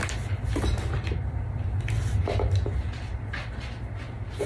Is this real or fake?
real